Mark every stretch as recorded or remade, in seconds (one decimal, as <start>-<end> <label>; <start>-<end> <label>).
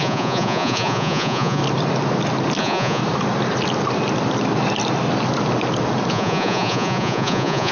0.0-1.6 remade; 1.6-2.6 recorded; 2.6-3.0 remade; 3.0-6.1 recorded; 6.1-7.7 remade